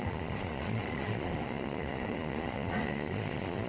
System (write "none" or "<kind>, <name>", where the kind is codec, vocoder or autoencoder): vocoder, Vocos